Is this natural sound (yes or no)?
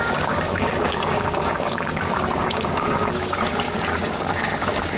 no